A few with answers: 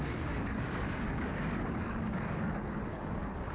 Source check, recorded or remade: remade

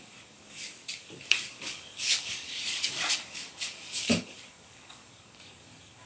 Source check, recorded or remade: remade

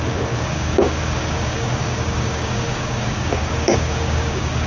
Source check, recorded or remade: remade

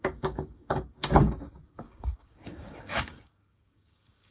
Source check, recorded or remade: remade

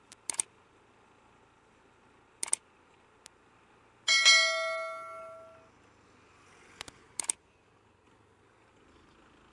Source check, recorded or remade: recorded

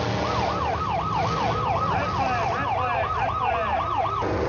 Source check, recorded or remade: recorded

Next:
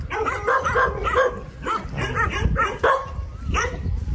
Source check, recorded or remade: recorded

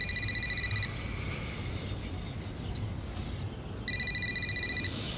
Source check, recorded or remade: recorded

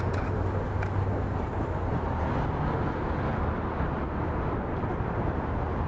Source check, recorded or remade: recorded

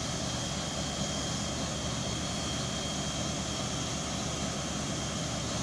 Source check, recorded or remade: recorded